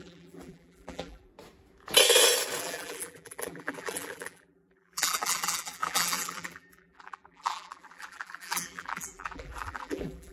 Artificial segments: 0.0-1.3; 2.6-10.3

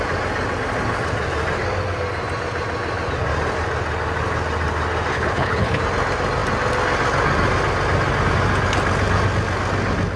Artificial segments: 5.1-5.8

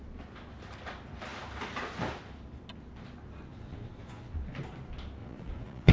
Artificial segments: 3.5-4.4; 5.2-5.9

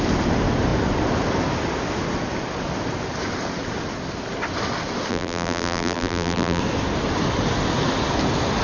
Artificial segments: 5.1-6.6

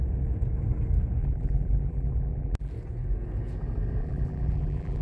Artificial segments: 1.2-2.7; 4.0-5.0